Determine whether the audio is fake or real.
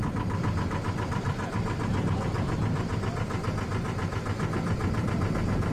real